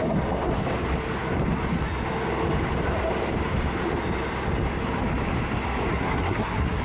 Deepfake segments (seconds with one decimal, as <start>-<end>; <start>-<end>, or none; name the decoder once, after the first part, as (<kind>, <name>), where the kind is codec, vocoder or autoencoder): 5.9-6.8 (codec, SNAC)